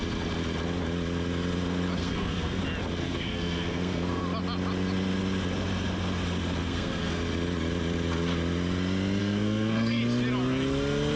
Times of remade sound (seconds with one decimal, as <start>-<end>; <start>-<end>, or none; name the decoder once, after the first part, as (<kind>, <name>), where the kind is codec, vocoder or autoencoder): 2.0-2.6 (codec, SNAC); 3.0-4.2; 6.6-7.2; 9.2-10.0